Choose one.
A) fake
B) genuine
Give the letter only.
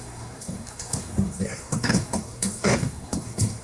A